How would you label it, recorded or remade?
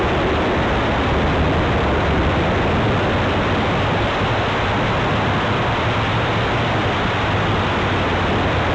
recorded